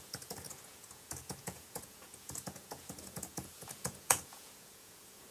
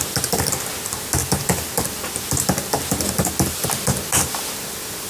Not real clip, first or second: first